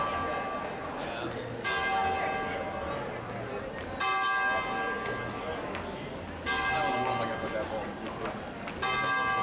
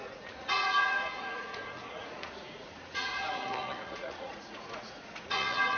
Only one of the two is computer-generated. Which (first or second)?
second